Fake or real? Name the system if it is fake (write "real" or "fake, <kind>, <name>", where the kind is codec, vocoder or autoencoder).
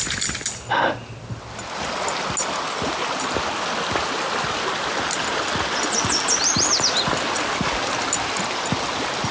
real